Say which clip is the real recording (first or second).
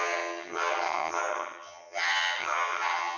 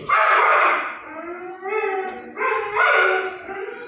second